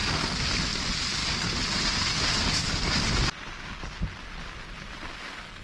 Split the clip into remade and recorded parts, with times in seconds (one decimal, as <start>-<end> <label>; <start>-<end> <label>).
0.0-5.6 recorded